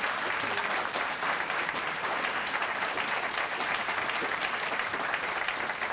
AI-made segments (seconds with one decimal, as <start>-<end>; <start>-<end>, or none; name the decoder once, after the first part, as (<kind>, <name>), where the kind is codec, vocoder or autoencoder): 0.6-3.2 (vocoder, BigVGAN v2); 4.3-5.4